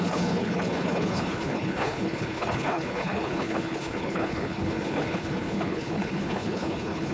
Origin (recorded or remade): remade